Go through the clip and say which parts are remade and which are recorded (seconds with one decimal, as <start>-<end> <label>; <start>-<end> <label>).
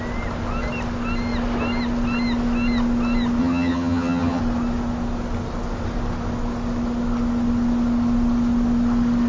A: 0.0-3.4 recorded; 3.4-4.4 remade; 4.4-9.3 recorded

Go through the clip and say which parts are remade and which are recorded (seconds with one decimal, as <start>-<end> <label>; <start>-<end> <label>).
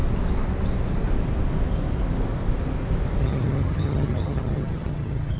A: 0.0-3.2 recorded; 3.2-5.4 remade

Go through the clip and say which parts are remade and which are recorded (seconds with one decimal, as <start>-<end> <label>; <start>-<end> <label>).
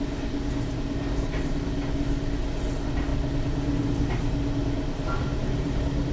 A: 0.0-6.1 recorded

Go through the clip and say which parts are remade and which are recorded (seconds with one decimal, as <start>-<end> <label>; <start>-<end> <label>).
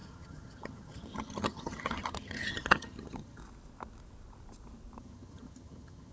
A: 0.0-3.4 remade; 3.4-5.0 recorded; 5.0-6.1 remade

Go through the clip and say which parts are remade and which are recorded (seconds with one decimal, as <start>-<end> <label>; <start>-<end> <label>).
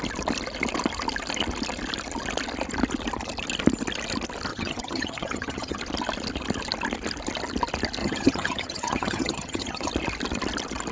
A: 0.0-4.5 recorded; 4.5-5.8 remade; 5.8-8.0 recorded; 8.0-9.9 remade; 9.9-10.9 recorded